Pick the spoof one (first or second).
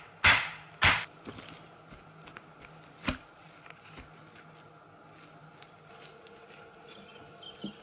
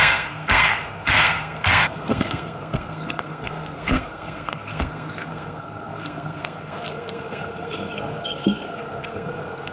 second